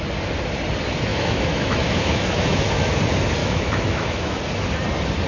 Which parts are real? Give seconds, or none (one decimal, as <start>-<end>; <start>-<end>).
0.0-1.1; 3.0-3.4; 4.4-5.3